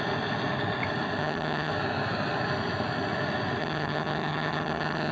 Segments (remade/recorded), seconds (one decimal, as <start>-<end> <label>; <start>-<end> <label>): 0.0-1.2 recorded; 1.2-1.7 remade; 1.7-3.6 recorded; 3.6-5.1 remade